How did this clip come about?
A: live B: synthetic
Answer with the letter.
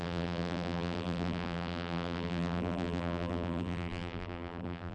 B